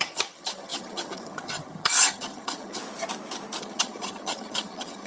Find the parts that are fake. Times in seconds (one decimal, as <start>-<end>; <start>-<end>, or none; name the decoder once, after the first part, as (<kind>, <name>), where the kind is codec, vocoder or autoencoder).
0.0-2.8 (vocoder, HiFi-GAN); 3.6-5.1